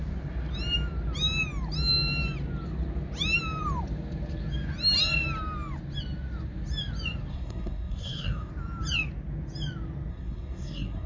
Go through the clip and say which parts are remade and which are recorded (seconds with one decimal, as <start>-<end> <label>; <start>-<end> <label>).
0.0-7.3 recorded; 7.3-8.5 remade; 8.5-10.1 recorded; 10.1-11.1 remade